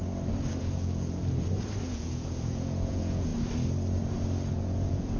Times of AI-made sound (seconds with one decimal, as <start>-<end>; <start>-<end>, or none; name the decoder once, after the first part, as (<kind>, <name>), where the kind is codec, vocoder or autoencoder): 0.6-1.2 (vocoder, Vocos); 1.9-3.3; 4.5-5.2